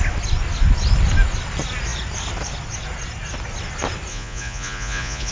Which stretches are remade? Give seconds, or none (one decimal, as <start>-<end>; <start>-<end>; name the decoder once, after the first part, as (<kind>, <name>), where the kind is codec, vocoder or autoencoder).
4.1-5.3 (vocoder, Vocos)